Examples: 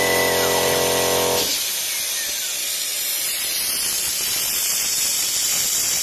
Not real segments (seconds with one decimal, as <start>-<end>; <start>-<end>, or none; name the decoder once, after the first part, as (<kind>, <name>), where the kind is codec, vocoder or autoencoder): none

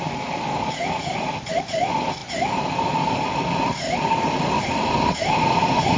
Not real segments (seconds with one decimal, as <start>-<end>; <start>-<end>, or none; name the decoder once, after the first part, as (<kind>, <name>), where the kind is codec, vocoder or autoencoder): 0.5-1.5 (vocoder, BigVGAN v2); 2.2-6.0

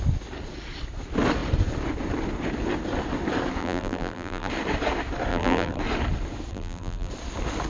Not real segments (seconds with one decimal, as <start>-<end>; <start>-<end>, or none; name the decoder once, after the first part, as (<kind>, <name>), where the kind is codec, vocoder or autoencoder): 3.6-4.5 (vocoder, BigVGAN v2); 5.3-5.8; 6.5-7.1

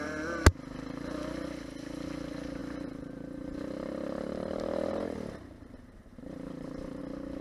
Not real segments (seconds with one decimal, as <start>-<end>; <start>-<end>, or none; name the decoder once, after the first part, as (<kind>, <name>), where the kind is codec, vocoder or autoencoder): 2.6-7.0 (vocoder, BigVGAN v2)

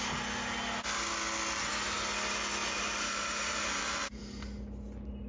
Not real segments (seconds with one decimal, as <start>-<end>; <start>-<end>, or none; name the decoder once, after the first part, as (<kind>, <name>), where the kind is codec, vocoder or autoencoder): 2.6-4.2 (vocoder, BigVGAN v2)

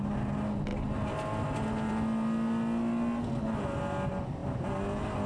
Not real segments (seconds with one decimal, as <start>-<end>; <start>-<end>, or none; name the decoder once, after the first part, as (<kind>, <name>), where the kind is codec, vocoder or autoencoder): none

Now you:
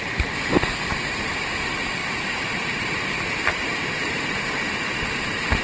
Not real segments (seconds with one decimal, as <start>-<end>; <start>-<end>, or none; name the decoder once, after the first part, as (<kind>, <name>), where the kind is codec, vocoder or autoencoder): 2.0-4.2 (vocoder, BigVGAN v2)